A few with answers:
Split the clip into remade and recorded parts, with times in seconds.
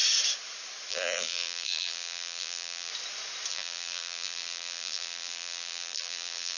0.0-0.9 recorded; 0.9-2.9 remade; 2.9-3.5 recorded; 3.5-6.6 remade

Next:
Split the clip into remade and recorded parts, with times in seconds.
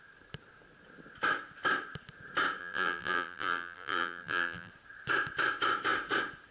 0.0-2.6 recorded; 2.6-4.7 remade; 4.7-6.5 recorded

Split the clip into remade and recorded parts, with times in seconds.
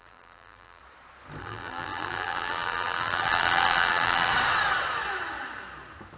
0.0-0.8 remade; 0.8-1.4 recorded; 1.4-4.3 remade; 4.3-6.2 recorded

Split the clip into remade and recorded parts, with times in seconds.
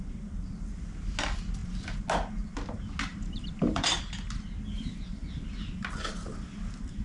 0.0-3.1 recorded; 3.1-3.9 remade; 3.9-7.0 recorded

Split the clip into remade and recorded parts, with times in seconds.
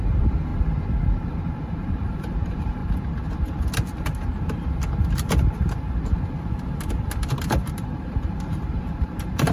0.0-0.5 remade; 0.5-1.3 recorded; 1.3-2.8 remade; 2.8-7.7 recorded; 7.7-9.5 remade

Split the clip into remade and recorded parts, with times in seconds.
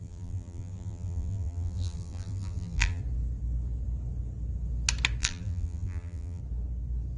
0.0-3.0 remade; 3.0-5.2 recorded; 5.2-6.4 remade; 6.4-7.2 recorded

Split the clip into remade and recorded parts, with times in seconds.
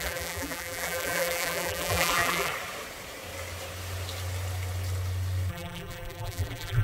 0.0-2.5 remade; 2.5-5.5 recorded; 5.5-6.8 remade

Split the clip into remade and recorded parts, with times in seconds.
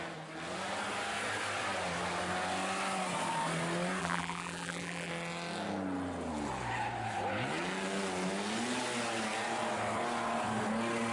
0.0-4.0 recorded; 4.0-5.1 remade; 5.1-11.1 recorded